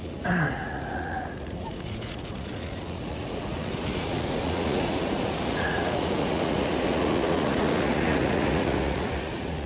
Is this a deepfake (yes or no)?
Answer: yes